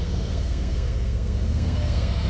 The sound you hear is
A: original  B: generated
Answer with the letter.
B